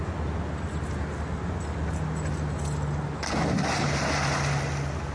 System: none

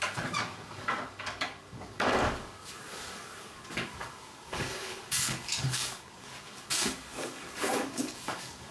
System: codec, DAC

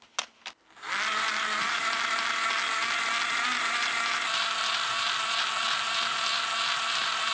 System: none